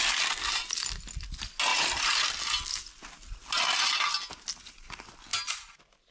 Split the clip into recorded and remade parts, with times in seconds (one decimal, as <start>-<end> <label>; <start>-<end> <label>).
0.0-6.1 recorded